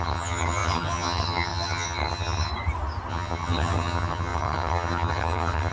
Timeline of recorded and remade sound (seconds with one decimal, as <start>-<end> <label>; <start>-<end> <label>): 0.0-2.5 remade; 2.5-3.1 recorded; 3.1-5.7 remade